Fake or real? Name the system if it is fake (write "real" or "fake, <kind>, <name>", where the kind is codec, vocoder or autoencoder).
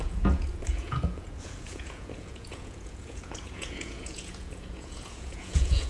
fake, vocoder, Vocos